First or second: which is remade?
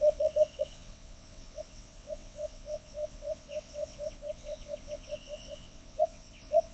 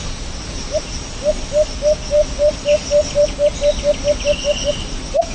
first